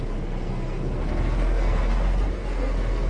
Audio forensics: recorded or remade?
remade